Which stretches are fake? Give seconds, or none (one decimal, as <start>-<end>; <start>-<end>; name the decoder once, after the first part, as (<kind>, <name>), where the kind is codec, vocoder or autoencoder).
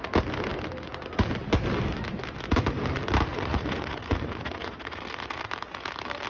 3.3-5.0 (vocoder, Vocos)